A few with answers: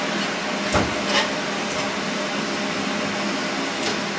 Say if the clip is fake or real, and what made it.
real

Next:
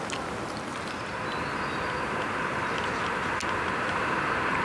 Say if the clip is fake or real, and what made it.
real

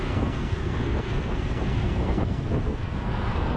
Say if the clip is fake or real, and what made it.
fake, codec, SNAC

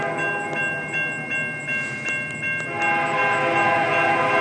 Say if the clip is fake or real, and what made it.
real